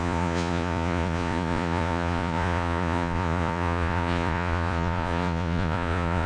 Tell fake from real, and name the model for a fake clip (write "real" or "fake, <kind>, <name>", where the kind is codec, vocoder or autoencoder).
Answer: fake, vocoder, Vocos